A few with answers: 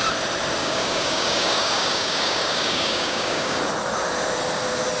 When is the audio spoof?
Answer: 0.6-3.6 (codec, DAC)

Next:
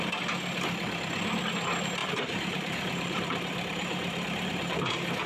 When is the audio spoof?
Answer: 2.0-5.3 (vocoder, BigVGAN v2)

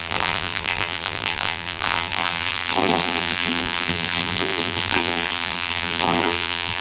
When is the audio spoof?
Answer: 0.0-6.8 (vocoder, BigVGAN v2)

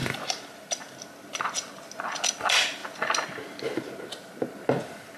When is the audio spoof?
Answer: none

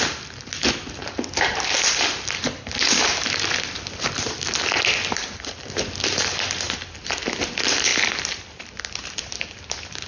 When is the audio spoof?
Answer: none

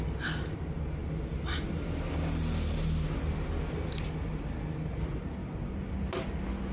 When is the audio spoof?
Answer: none

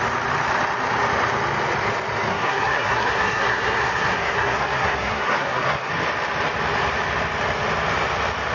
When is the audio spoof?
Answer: 2.3-5.9 (codec, SNAC)